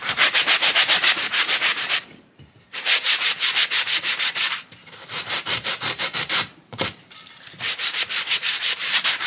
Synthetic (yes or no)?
yes